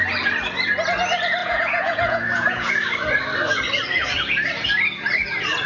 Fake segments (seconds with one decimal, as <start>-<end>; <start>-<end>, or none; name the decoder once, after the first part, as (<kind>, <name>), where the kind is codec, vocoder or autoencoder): 1.4-2.7 (vocoder, Vocos)

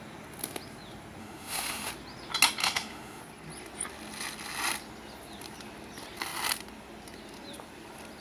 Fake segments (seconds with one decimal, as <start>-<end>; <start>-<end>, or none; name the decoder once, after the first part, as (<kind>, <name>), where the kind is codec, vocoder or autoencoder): 1.2-1.9 (autoencoder, DAC-VAE); 2.6-3.2